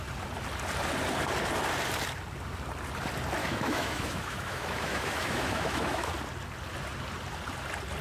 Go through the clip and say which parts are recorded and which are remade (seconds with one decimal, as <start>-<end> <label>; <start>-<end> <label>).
0.0-3.4 recorded; 3.4-6.1 remade; 6.1-8.0 recorded